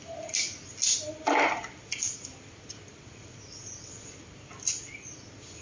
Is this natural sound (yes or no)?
yes